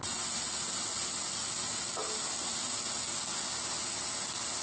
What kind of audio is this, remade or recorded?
recorded